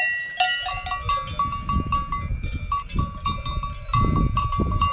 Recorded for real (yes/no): yes